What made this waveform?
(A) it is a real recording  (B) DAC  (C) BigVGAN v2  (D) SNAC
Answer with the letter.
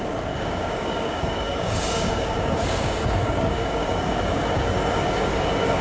B